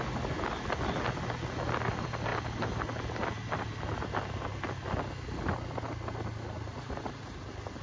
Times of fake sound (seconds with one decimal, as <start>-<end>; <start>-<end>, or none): none